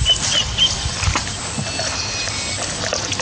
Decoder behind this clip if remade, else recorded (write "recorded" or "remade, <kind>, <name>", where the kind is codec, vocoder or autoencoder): recorded